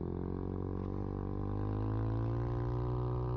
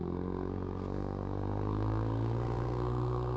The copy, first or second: second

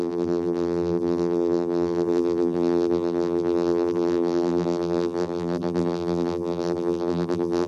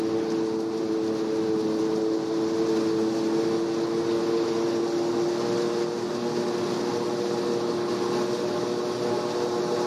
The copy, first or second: first